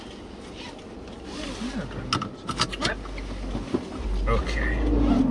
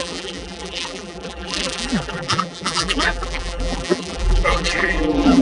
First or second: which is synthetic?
second